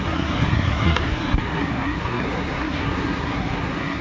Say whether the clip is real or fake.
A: fake